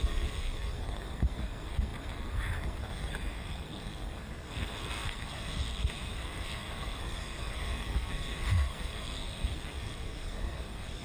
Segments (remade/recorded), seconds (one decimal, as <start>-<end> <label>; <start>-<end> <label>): 0.0-11.0 remade